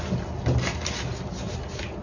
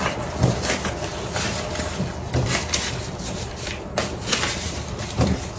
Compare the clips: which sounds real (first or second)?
first